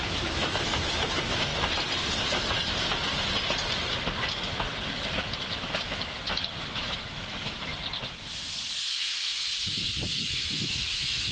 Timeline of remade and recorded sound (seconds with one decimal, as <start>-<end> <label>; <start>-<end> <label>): 0.0-1.5 remade; 1.5-4.3 recorded; 4.3-7.7 remade; 7.7-8.8 recorded; 8.8-11.3 remade